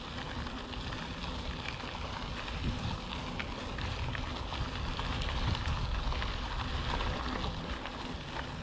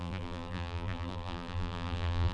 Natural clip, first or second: first